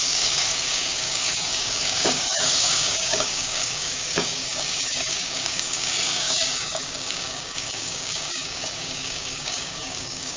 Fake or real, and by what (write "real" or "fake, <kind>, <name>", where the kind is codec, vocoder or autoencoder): fake, codec, DAC